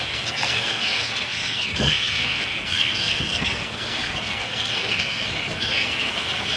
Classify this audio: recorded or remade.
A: remade